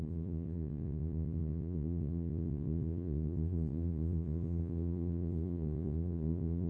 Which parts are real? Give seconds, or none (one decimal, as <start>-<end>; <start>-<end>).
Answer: none